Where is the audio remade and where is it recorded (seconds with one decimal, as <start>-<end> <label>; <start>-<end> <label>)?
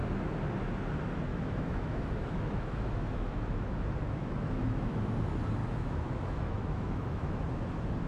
0.0-1.3 recorded; 1.3-5.0 remade; 5.0-5.6 recorded; 5.6-7.4 remade; 7.4-8.1 recorded